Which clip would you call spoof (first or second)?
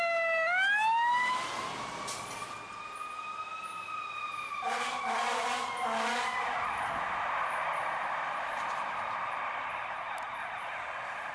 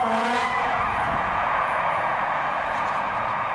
second